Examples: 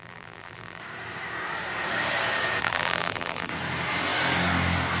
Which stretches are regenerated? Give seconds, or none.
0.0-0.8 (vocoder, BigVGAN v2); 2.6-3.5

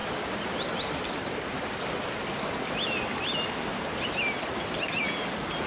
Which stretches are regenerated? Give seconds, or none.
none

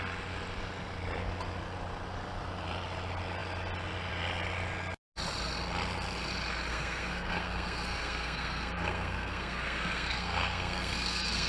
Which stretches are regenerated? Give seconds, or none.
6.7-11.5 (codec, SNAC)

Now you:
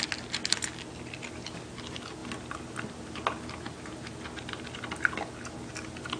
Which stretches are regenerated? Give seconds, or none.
none